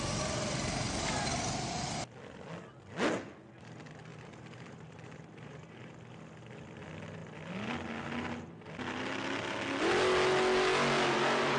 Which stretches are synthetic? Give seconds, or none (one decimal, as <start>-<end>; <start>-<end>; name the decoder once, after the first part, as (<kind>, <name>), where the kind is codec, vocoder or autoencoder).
4.1-5.9 (vocoder, BigVGAN v2)

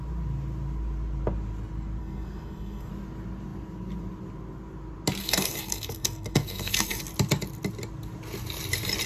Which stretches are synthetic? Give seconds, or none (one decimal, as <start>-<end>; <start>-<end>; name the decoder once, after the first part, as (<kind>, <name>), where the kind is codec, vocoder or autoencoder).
2.0-2.9 (codec, SNAC); 5.2-7.0